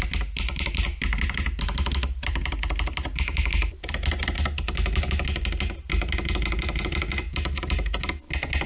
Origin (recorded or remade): recorded